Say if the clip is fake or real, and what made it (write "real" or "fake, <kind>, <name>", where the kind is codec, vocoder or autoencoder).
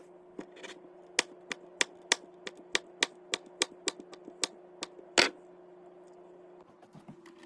real